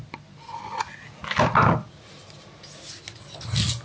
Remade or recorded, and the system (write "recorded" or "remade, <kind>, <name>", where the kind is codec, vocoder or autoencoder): recorded